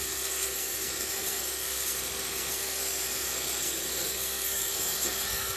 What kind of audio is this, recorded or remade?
remade